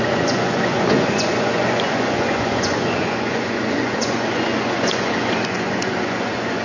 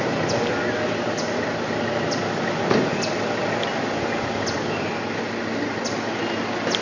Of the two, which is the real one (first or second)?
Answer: second